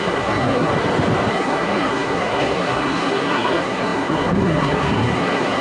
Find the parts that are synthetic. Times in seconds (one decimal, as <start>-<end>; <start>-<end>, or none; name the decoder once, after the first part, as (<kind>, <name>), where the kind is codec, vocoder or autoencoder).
0.0-0.7 (codec, SNAC); 1.3-5.6